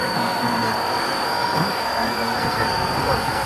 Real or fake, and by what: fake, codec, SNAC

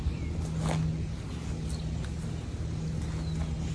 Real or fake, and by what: real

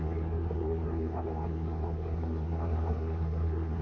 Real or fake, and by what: fake, codec, SNAC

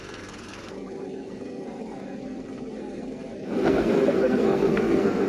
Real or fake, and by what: fake, codec, SNAC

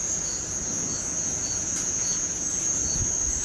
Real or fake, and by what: real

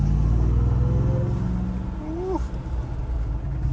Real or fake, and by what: real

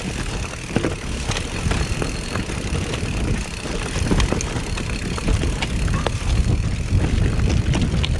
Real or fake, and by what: real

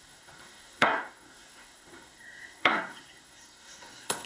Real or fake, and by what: fake, codec, SNAC